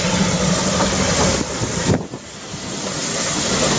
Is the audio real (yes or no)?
yes